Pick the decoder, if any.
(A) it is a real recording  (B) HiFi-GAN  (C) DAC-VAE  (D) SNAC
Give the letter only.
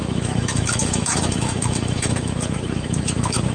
C